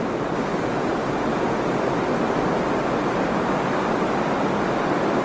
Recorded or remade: recorded